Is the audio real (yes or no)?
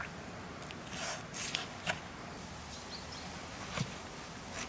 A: yes